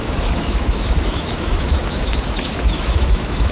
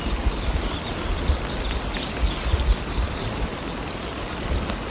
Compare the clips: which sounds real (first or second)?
second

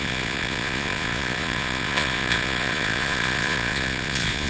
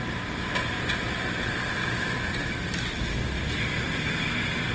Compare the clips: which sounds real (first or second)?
second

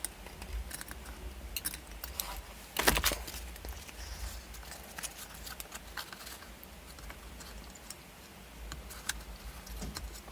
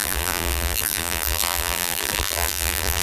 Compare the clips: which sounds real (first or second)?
first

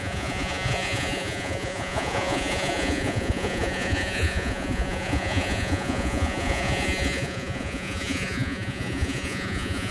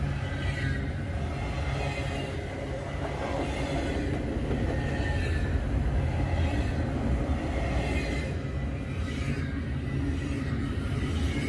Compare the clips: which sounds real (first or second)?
second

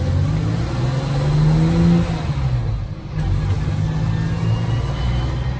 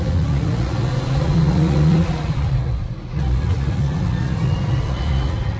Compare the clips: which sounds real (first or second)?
first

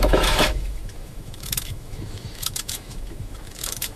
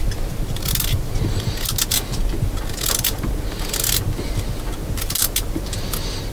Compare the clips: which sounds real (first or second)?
second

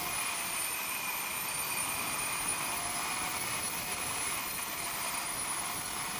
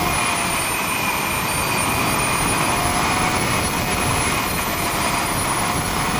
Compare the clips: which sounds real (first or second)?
second